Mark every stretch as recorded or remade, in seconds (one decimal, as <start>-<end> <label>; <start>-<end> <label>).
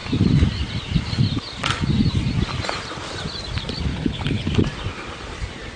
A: 0.0-3.9 recorded; 3.9-4.5 remade; 4.5-5.8 recorded